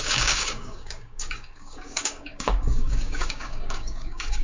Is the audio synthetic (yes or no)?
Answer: yes